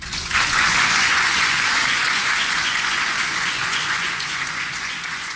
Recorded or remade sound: remade